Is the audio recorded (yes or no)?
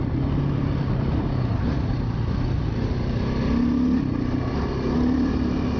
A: yes